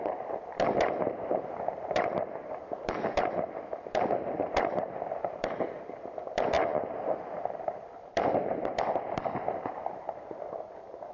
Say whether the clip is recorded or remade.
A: remade